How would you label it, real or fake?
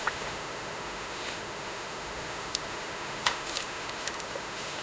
fake